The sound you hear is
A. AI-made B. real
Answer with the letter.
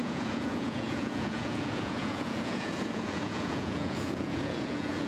A